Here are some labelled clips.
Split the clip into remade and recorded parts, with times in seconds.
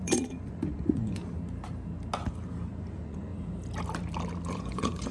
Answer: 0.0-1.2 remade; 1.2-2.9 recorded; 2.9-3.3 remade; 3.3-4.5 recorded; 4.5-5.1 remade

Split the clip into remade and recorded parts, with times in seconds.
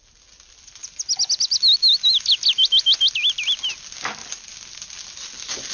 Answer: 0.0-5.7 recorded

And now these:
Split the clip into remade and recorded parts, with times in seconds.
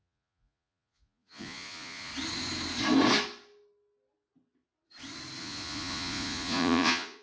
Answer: 0.0-2.1 remade; 2.1-5.4 recorded; 5.4-7.2 remade